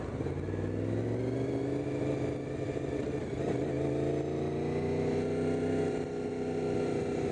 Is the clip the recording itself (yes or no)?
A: yes